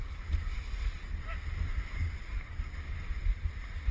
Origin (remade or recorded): recorded